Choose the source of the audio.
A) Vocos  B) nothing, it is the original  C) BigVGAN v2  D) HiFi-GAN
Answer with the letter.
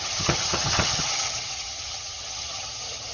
D